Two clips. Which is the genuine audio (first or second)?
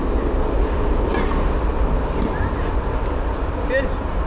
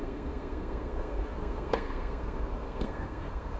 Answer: first